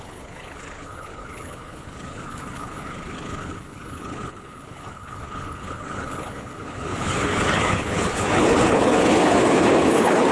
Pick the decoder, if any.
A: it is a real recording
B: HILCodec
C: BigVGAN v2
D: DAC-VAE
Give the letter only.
B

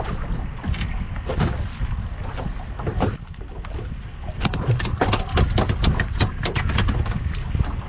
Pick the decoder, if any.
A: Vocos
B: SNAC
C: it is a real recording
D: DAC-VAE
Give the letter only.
C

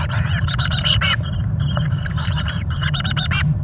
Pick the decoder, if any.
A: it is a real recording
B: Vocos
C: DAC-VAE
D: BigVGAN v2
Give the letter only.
D